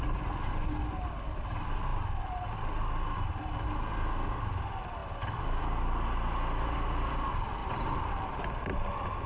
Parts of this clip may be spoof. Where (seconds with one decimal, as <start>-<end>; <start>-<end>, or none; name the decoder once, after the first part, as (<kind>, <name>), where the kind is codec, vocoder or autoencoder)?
7.6-8.5 (vocoder, BigVGAN v2)